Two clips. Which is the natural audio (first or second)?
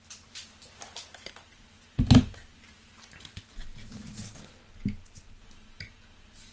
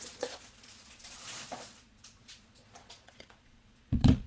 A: first